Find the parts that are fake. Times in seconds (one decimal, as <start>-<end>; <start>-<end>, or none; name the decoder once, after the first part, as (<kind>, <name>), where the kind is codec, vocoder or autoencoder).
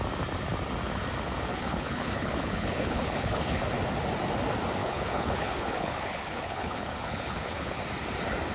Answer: 1.5-3.6 (codec, HILCodec); 4.8-7.8